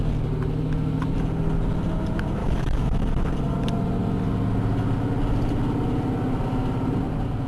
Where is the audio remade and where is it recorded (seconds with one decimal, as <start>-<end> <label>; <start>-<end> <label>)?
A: 0.0-2.4 recorded; 2.4-3.1 remade; 3.1-7.5 recorded